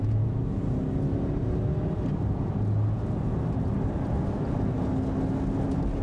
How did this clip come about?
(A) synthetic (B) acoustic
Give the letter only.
B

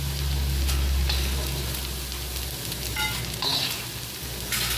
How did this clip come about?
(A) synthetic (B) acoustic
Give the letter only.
B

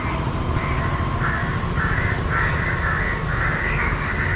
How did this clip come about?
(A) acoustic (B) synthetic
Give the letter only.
A